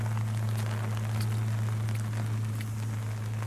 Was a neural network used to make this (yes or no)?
no